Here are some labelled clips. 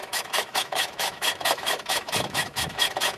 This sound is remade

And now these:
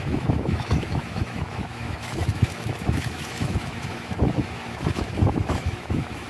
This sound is remade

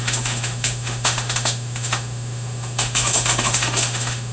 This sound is remade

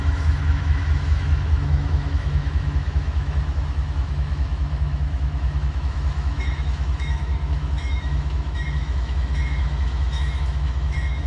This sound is remade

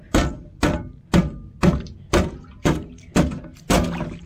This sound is recorded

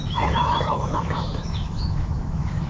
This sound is remade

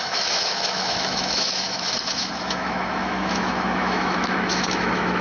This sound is remade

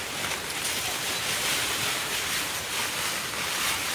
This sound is recorded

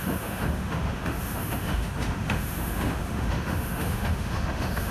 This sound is remade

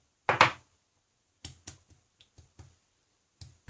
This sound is recorded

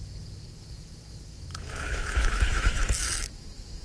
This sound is remade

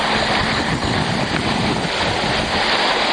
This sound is recorded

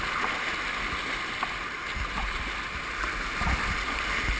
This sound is recorded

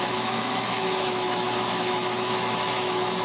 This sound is remade